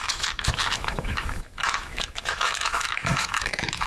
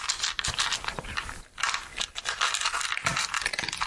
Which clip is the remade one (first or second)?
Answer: first